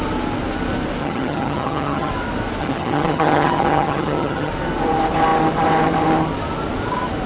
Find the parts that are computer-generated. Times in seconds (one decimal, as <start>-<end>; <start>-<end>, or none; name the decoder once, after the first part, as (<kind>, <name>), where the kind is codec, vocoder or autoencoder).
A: 1.0-2.1 (vocoder, HiFi-GAN); 2.6-4.5